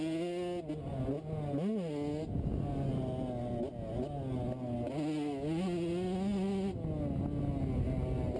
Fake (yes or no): no